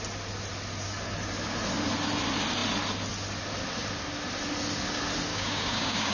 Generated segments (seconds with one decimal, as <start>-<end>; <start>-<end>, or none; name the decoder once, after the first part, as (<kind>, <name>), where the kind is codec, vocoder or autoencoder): 5.3-6.1 (codec, DAC)